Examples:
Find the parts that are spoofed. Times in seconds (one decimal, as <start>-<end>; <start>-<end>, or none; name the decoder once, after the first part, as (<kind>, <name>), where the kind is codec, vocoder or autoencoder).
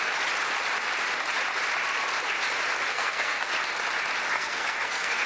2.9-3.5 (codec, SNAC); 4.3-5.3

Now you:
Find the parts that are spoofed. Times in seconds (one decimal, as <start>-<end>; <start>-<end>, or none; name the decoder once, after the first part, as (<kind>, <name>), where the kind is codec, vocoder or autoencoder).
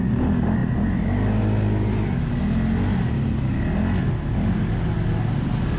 none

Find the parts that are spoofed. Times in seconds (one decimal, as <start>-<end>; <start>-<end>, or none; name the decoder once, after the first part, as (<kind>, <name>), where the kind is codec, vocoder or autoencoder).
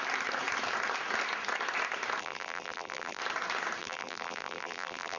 2.2-3.2 (vocoder, BigVGAN v2); 3.8-5.2